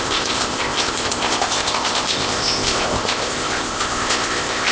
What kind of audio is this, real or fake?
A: fake